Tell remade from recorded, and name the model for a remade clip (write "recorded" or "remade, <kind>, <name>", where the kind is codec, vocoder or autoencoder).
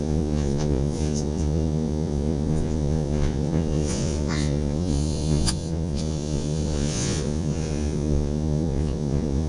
remade, vocoder, Vocos